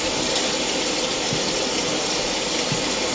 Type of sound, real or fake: real